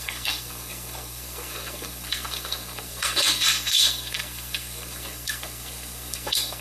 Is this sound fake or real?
fake